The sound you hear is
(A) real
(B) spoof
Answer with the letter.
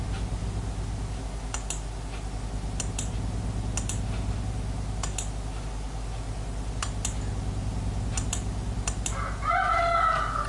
A